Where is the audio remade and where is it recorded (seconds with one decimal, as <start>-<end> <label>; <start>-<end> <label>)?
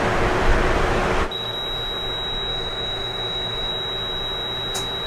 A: 0.0-2.5 recorded; 2.5-3.7 remade; 3.7-5.1 recorded